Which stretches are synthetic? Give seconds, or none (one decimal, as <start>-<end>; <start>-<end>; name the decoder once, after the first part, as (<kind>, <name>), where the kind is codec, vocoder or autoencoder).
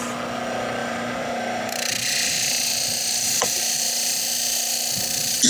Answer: 0.8-1.9 (vocoder, BigVGAN v2); 3.0-4.2